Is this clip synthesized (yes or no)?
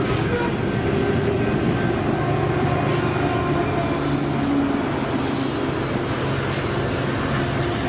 no